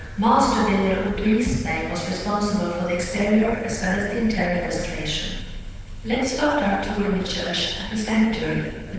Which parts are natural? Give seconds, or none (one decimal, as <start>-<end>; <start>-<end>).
0.0-1.1; 1.5-3.0; 4.8-5.4